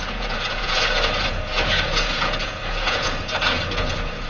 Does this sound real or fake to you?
fake